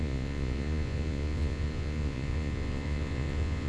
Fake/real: fake